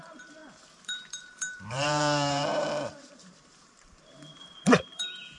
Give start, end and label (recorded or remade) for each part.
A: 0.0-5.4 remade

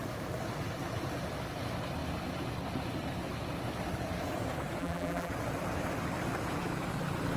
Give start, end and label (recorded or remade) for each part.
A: 0.0-4.8 recorded; 4.8-5.3 remade; 5.3-7.4 recorded